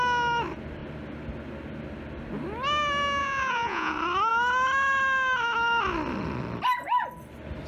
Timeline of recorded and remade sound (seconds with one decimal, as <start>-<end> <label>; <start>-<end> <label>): 0.0-3.2 recorded; 3.2-3.9 remade; 3.9-7.7 recorded